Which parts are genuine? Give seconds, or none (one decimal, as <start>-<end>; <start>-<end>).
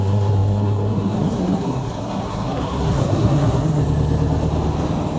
3.8-5.2